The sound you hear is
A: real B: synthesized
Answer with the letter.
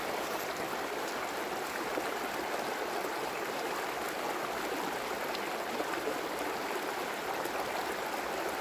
A